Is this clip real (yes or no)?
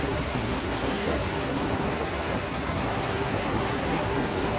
no